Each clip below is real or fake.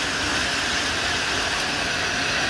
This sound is real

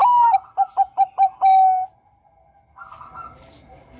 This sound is real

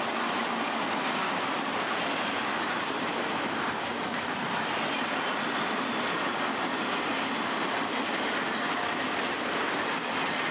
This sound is real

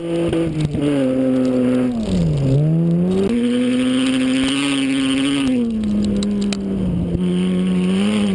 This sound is real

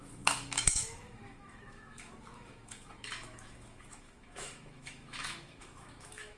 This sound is fake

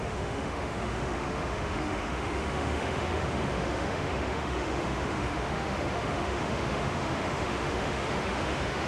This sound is fake